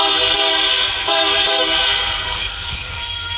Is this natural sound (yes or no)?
no